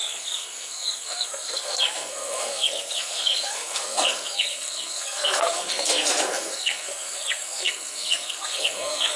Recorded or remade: remade